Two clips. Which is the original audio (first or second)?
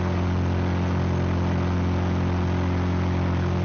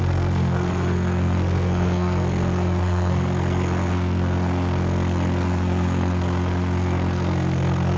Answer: first